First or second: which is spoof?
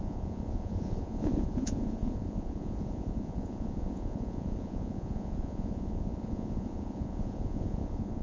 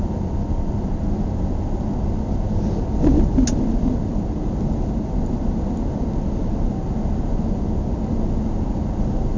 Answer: first